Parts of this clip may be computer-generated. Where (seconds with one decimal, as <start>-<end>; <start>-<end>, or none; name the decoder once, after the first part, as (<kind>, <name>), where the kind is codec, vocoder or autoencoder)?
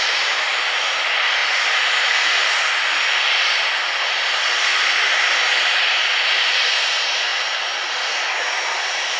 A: none